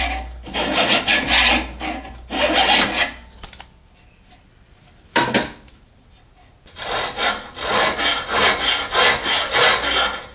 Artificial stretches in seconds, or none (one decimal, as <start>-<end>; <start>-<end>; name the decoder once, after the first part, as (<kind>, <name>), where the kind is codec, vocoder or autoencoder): 5.1-5.8 (autoencoder, DAC-VAE)

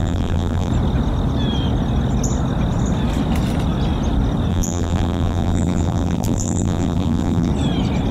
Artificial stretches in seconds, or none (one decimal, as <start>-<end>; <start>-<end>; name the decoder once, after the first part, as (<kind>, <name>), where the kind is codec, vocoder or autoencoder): 0.0-0.7 (vocoder, BigVGAN v2); 4.5-7.5

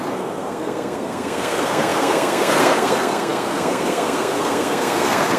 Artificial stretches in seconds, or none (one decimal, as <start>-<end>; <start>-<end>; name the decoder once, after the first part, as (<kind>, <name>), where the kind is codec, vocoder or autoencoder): 0.0-5.4 (codec, SNAC)